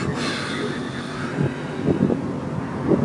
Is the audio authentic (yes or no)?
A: yes